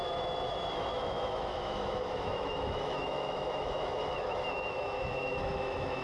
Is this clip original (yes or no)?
no